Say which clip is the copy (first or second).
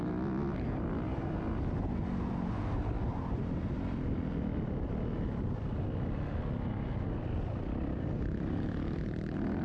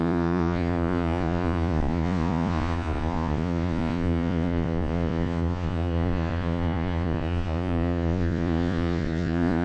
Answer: second